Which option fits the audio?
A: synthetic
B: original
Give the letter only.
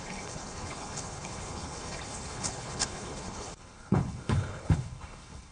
A